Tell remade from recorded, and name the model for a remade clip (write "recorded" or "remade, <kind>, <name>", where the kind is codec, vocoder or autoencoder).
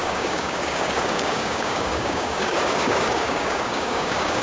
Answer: remade, codec, DAC